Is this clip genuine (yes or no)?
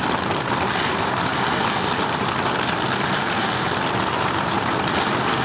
yes